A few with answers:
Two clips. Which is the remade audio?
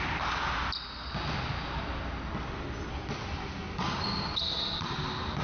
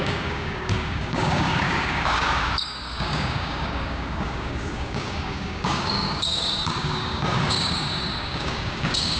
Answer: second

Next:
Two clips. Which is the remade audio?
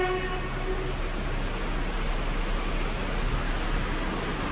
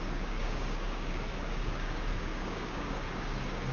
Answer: second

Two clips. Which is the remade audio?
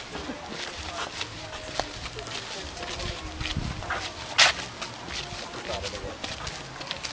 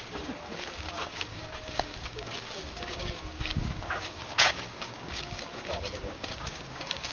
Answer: second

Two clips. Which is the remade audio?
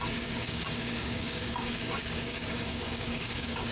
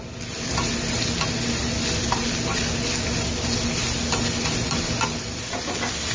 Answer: first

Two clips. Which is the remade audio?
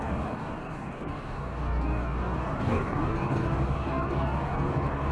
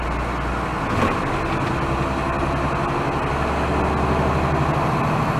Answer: first